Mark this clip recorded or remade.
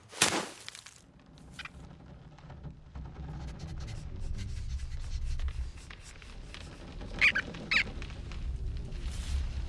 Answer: recorded